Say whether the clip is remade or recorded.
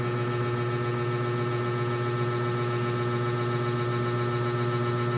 recorded